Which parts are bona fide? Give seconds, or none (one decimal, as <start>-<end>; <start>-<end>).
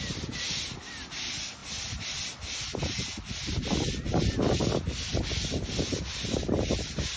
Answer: 0.0-7.2